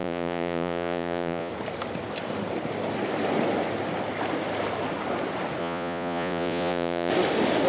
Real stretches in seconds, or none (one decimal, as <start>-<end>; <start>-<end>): 1.5-5.6; 7.1-7.7